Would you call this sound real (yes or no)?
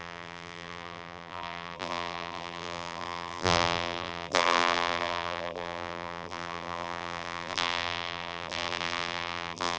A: no